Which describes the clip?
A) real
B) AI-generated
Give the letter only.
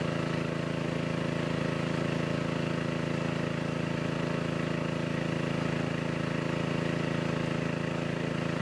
A